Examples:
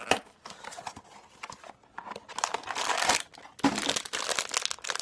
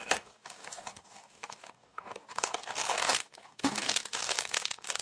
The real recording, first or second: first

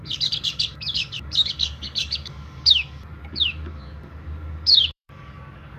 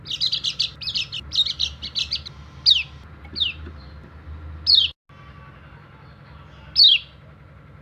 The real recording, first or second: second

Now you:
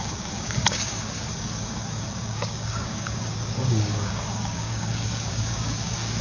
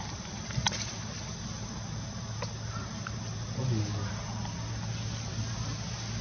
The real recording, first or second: second